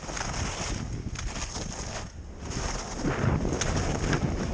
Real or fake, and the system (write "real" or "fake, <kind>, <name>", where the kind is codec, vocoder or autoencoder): real